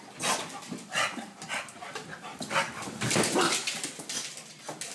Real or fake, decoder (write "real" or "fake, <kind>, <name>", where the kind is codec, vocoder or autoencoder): real